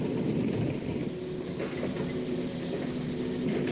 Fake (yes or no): no